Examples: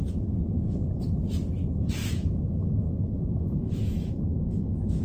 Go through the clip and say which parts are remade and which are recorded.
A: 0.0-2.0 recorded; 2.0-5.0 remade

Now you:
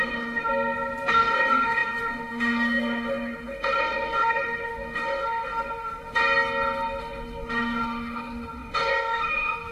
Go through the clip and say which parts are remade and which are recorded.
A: 0.0-0.5 remade; 0.5-1.1 recorded; 1.1-6.2 remade; 6.2-7.0 recorded; 7.0-9.7 remade

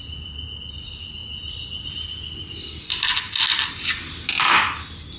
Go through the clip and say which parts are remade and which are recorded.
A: 0.0-5.2 recorded

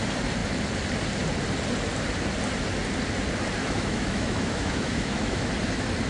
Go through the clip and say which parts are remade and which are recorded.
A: 0.0-3.6 recorded; 3.6-5.5 remade; 5.5-6.1 recorded

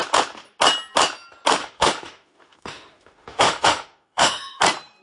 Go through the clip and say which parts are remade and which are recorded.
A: 0.0-1.6 recorded; 1.6-4.6 remade; 4.6-5.0 recorded

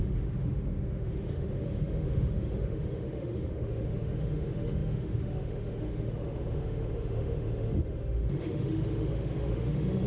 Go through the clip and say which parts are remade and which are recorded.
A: 0.0-10.1 remade

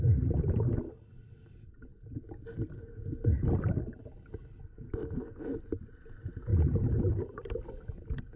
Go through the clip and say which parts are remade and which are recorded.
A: 0.0-8.4 recorded